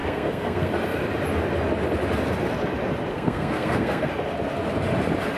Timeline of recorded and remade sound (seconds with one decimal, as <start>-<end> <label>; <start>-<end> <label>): 0.0-0.7 remade; 0.7-3.1 recorded; 3.1-4.1 remade; 4.1-5.4 recorded